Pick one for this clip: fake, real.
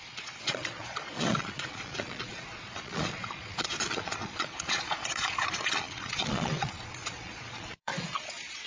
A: fake